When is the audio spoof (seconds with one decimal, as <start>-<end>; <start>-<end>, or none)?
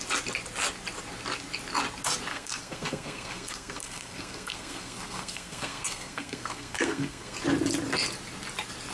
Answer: 2.3-7.4